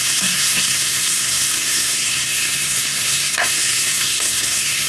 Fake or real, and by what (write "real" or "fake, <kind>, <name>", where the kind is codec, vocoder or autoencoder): fake, codec, SNAC